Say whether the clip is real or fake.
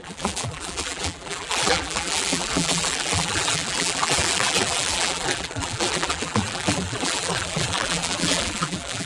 fake